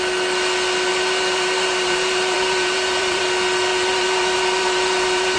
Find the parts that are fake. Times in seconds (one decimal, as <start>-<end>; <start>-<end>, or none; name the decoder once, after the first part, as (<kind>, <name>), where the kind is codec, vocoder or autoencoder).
0.9-3.2 (vocoder, BigVGAN v2); 3.7-5.4